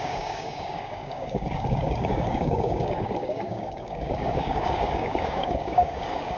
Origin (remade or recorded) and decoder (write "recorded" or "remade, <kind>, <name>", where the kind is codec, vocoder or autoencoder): remade, codec, DAC